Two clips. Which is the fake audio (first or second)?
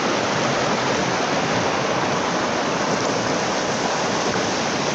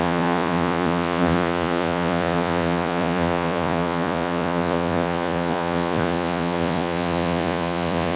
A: second